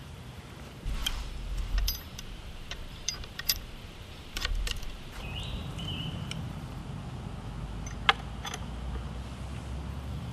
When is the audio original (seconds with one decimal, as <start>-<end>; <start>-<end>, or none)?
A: 6.8-9.9